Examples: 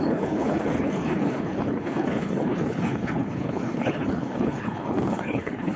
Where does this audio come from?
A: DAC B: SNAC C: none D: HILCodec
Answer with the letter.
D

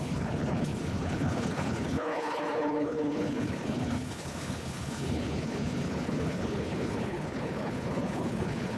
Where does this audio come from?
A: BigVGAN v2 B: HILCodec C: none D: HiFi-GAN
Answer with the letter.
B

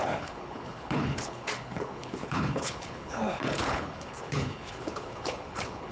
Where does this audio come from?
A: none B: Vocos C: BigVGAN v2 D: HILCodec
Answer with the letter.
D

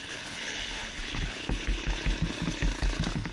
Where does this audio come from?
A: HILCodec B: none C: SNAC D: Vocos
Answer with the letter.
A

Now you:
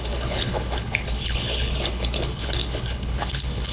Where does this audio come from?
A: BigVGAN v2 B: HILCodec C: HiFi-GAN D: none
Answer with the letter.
B